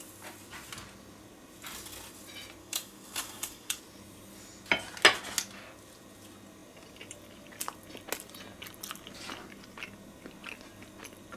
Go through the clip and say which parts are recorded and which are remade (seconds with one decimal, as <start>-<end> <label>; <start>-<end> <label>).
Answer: 0.0-2.6 recorded; 2.6-3.8 remade; 3.8-11.4 recorded